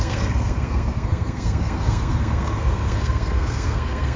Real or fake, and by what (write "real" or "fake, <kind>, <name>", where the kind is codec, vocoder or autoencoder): fake, codec, SNAC